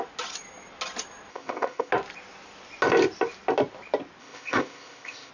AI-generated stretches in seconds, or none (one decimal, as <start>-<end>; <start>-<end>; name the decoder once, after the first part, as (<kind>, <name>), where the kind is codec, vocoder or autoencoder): 1.3-1.9 (codec, ZipCodec); 4.2-5.3